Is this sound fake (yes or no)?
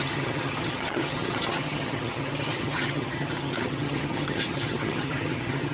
yes